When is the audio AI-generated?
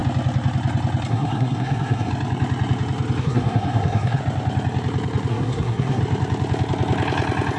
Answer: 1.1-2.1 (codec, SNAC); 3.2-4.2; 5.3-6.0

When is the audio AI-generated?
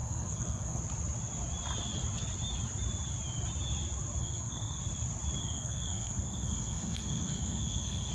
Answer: 0.0-0.8 (codec, SNAC); 4.2-4.8; 5.4-8.1